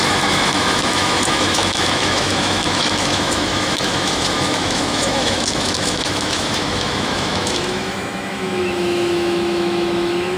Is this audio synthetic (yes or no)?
yes